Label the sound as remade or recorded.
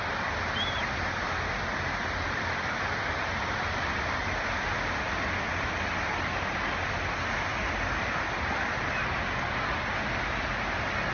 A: recorded